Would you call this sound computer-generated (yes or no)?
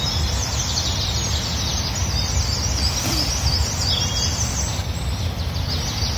no